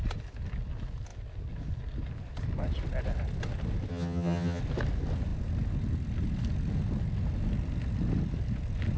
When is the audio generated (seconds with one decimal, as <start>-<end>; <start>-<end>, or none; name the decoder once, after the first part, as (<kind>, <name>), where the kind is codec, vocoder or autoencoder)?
3.9-4.6 (vocoder, HiFi-GAN)